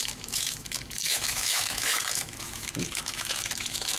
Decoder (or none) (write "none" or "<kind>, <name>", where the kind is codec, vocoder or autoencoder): autoencoder, DAC-VAE